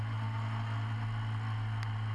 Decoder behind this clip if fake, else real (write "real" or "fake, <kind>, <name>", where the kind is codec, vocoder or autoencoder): real